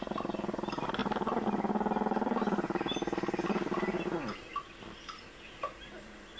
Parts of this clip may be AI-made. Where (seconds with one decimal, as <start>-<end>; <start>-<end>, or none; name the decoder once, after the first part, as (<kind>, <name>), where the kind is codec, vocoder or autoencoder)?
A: none